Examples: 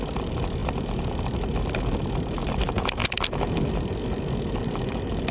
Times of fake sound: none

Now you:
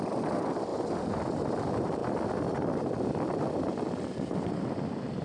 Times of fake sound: 0.0-0.7 (vocoder, BigVGAN v2); 1.6-2.0; 3.1-5.2

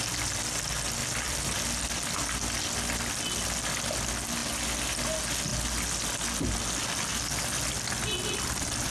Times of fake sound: 1.0-1.6 (vocoder, BigVGAN v2)